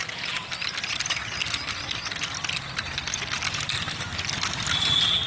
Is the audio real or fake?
real